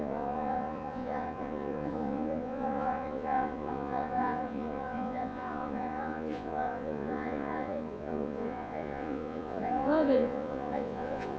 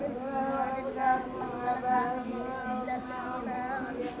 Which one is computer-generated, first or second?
first